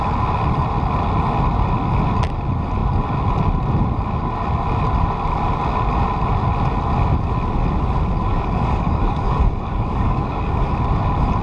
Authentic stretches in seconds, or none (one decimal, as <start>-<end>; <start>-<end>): 0.0-8.3; 10.7-11.4